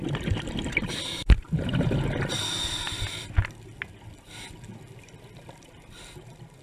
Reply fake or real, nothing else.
real